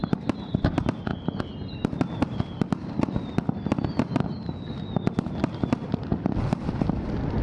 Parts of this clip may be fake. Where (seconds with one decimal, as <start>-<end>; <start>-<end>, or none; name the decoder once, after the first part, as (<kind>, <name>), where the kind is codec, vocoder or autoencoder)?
none